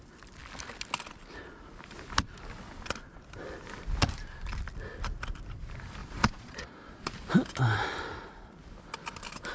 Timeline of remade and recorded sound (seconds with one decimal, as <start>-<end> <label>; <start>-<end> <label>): 0.0-6.0 recorded; 6.0-7.1 remade; 7.1-9.5 recorded